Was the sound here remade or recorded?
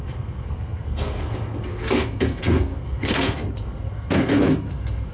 remade